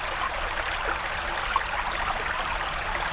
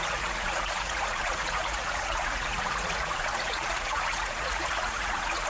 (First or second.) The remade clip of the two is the second